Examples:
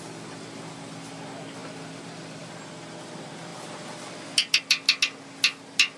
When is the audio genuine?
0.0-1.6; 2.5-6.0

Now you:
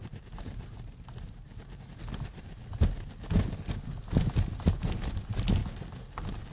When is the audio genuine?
1.6-6.5

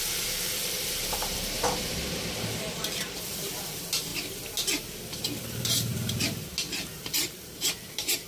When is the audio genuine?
4.1-5.4

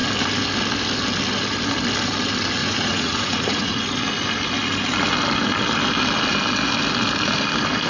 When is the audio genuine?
0.0-2.6; 3.8-7.9